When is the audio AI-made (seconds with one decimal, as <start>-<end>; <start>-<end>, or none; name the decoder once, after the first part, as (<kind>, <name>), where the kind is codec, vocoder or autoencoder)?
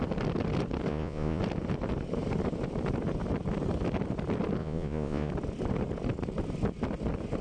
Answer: 0.9-1.4 (vocoder, Vocos); 4.6-5.3